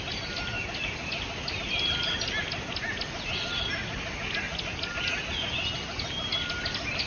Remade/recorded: recorded